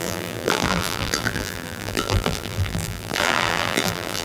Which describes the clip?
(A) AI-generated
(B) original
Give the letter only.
A